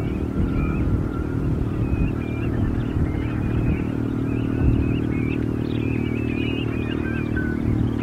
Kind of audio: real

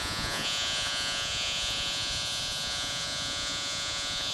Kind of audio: fake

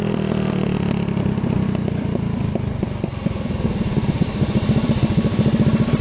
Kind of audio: real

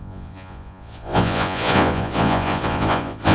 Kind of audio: fake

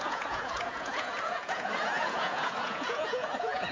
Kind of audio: fake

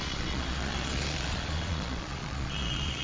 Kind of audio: fake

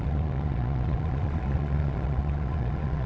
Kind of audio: fake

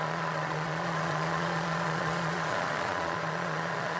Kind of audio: fake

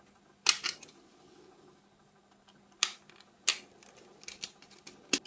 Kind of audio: real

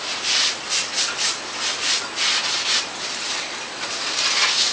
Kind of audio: real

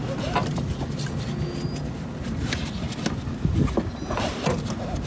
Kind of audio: real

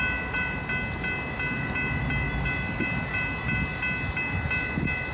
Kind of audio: real